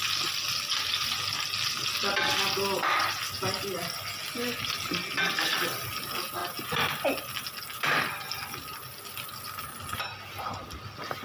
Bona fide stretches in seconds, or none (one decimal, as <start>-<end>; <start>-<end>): 0.0-11.2